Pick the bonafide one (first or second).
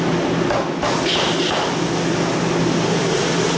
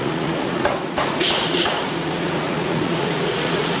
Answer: first